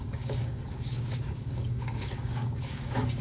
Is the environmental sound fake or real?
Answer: fake